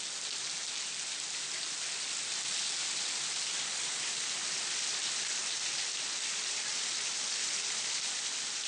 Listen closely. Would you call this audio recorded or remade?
recorded